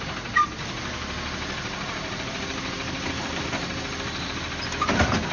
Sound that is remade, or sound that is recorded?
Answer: recorded